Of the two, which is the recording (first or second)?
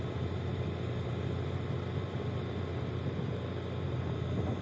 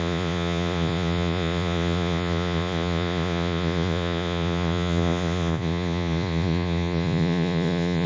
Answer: first